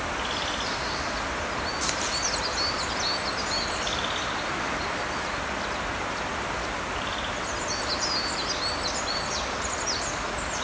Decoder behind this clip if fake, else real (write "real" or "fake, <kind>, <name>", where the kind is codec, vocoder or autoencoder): real